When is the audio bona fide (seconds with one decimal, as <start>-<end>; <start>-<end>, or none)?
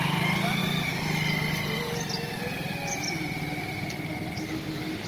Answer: 0.0-5.1